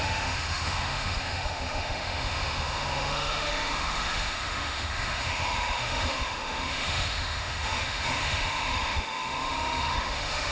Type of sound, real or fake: fake